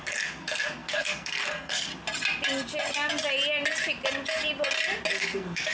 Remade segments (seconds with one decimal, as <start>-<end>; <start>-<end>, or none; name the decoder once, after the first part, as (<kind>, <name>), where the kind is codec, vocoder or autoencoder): 0.0-1.9 (codec, SNAC); 5.1-5.7